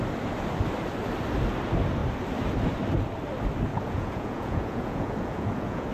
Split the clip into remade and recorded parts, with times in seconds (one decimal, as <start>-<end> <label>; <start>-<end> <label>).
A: 0.0-3.7 recorded; 3.7-5.9 remade